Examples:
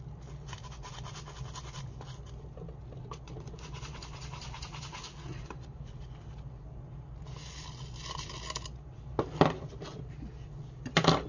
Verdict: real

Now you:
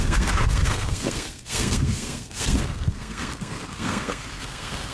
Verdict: fake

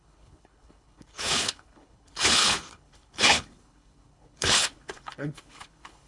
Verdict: fake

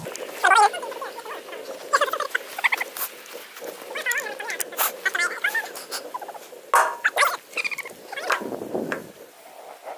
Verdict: real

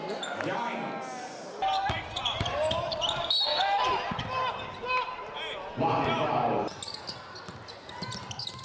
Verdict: real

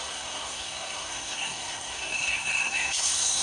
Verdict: fake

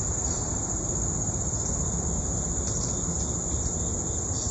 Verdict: real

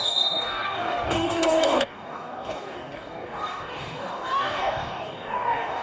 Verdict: fake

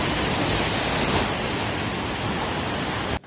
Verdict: real